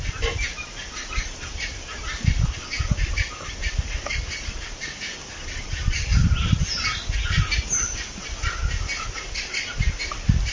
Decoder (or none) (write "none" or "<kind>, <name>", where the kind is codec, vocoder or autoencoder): none